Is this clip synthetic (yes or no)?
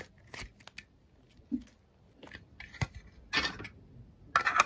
no